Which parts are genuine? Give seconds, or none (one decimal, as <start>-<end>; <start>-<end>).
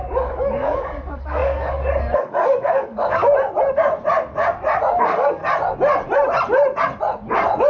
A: 3.2-5.0; 5.4-7.7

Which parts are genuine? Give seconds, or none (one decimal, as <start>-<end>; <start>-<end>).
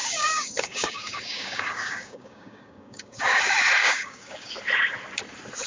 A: 3.4-3.8; 4.5-5.7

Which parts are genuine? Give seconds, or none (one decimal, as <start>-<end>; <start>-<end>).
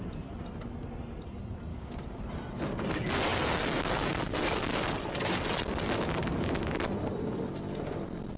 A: 0.0-1.7; 2.2-8.4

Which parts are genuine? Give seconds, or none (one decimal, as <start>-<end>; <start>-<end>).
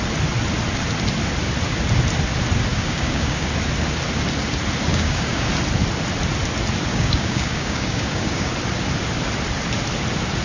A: 0.0-2.7; 3.5-4.9; 5.5-6.9; 8.5-10.4